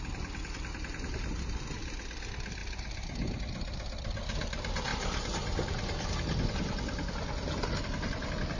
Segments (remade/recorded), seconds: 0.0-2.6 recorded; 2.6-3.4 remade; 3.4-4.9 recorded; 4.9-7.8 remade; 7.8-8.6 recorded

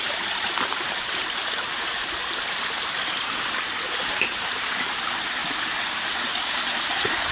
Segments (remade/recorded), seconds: 0.0-5.4 remade; 5.4-7.3 recorded

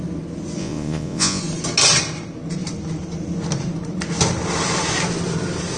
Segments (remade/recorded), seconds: 0.0-0.6 recorded; 0.6-1.4 remade; 1.4-5.8 recorded